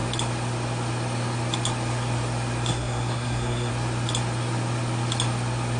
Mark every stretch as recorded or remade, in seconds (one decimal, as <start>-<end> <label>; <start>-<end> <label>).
0.0-2.7 recorded; 2.7-3.7 remade; 3.7-5.8 recorded